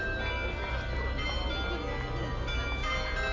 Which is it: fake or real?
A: real